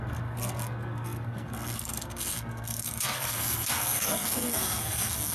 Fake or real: fake